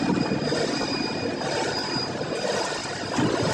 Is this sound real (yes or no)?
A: yes